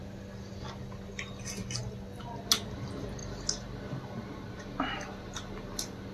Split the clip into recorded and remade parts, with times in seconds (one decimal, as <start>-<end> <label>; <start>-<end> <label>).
0.0-6.1 recorded